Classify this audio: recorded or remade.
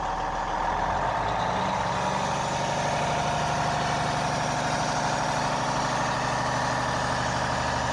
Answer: recorded